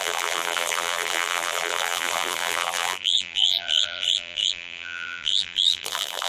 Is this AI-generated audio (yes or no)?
yes